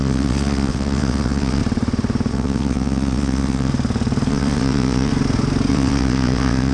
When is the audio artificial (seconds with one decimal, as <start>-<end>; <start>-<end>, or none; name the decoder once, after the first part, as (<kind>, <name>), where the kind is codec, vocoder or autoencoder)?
0.0-1.6 (vocoder, WaveNeXt); 2.3-3.7; 4.3-5.1; 5.7-6.7